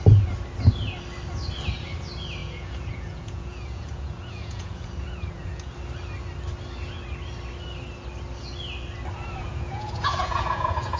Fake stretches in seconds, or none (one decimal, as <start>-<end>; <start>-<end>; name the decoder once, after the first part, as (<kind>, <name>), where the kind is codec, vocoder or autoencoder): 2.4-5.7 (vocoder, Vocos); 9.5-11.0